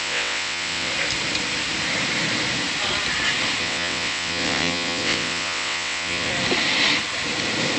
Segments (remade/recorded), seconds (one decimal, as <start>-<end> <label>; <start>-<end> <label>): 0.0-0.9 remade; 0.9-3.6 recorded; 3.6-6.3 remade; 6.3-7.8 recorded